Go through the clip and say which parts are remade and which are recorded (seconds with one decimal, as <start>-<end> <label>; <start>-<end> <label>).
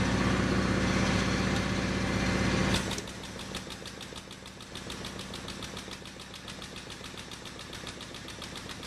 0.0-2.6 remade; 2.6-7.1 recorded; 7.1-8.9 remade